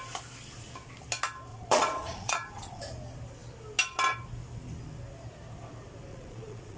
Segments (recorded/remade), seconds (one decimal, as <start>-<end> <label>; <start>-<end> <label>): 0.0-1.5 recorded; 1.5-2.8 remade; 2.8-6.1 recorded; 6.1-6.8 remade